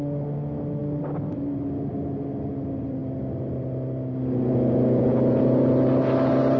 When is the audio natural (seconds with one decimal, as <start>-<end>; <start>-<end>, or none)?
0.0-6.6